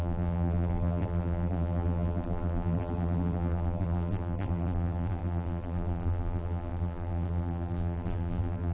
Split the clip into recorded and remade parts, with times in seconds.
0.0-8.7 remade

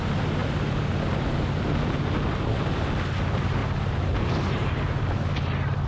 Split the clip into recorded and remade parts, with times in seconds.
0.0-3.6 recorded; 3.6-5.0 remade; 5.0-5.9 recorded

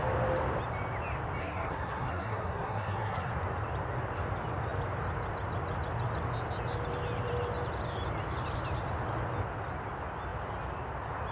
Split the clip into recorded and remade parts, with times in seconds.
0.0-1.4 recorded; 1.4-3.3 remade; 3.3-11.3 recorded

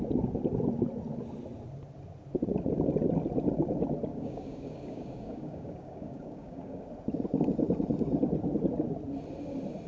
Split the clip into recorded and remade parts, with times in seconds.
0.0-4.1 recorded; 4.1-6.8 remade; 6.8-9.9 recorded

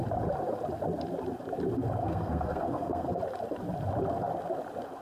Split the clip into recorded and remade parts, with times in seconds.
0.0-2.0 recorded; 2.0-3.2 remade; 3.2-5.0 recorded

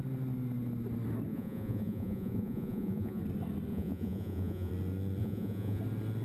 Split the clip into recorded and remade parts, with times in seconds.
0.0-1.3 recorded; 1.3-3.2 remade; 3.2-3.7 recorded; 3.7-4.7 remade; 4.7-5.2 recorded; 5.2-5.8 remade; 5.8-6.2 recorded

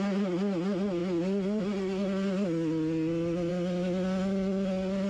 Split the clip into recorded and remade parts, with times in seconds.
0.0-5.1 recorded